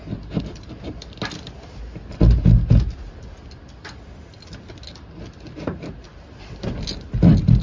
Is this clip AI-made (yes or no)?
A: no